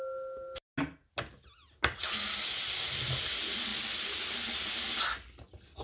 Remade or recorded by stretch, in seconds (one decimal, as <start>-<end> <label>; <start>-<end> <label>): 0.0-5.8 recorded